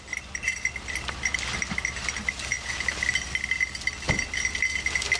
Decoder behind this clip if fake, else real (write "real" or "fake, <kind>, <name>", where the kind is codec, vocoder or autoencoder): real